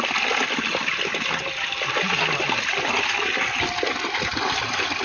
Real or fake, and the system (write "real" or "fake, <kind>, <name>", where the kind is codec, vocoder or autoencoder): real